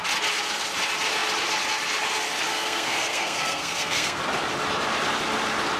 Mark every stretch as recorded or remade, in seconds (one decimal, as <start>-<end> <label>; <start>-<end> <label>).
0.0-2.5 recorded; 2.5-4.2 remade; 4.2-5.8 recorded